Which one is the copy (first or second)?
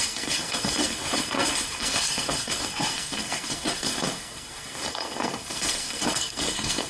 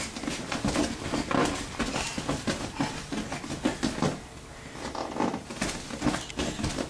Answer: first